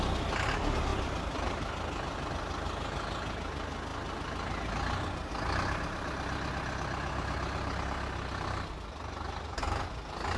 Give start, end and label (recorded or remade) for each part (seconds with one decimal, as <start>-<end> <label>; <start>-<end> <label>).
0.0-10.4 recorded